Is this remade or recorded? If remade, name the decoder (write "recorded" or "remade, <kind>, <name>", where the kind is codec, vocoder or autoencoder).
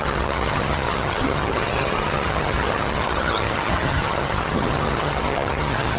remade, vocoder, HiFi-GAN